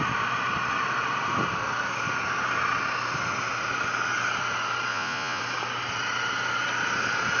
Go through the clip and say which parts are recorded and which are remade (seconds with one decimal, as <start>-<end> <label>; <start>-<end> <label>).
0.0-4.9 recorded; 4.9-5.4 remade; 5.4-7.4 recorded